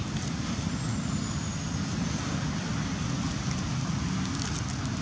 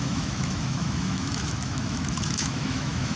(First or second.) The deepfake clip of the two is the second